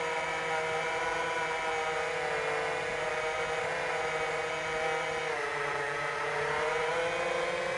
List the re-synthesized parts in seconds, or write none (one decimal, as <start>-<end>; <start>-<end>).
5.5-6.9